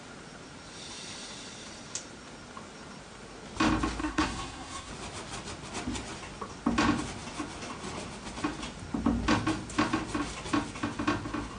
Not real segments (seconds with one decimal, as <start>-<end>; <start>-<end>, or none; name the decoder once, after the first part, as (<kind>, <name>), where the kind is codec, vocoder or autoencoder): 4.0-4.9 (codec, SNAC)